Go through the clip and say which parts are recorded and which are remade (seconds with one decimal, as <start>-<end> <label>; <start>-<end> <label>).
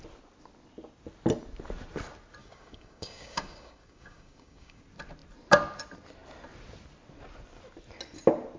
0.0-2.4 recorded; 2.4-4.8 remade; 4.8-8.6 recorded